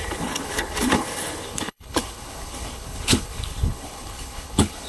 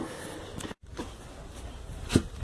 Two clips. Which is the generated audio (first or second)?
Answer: first